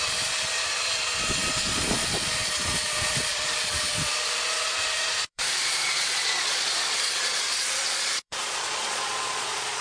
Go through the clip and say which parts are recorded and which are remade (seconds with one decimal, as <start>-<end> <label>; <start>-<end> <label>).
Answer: 0.0-9.8 remade